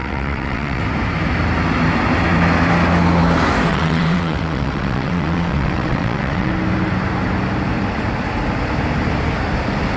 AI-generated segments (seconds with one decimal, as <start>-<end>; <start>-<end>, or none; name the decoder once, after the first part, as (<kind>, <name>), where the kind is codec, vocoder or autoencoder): 0.0-0.8 (vocoder, WaveNeXt); 3.7-6.5